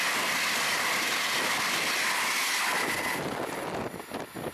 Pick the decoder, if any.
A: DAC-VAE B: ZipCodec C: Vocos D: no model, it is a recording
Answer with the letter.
D